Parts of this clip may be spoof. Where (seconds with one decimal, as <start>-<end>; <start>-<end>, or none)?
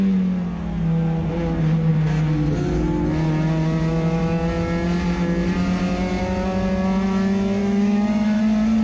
7.6-8.4